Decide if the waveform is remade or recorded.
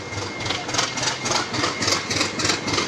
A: recorded